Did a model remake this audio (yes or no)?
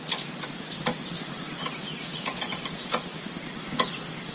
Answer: no